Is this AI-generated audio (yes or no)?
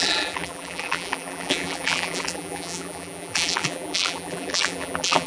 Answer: yes